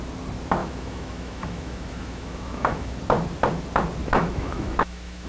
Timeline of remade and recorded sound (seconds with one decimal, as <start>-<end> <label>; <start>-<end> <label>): 0.0-0.6 recorded; 0.6-3.0 remade; 3.0-4.0 recorded; 4.0-5.3 remade